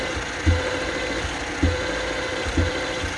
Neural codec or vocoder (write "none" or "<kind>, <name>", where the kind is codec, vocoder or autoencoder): none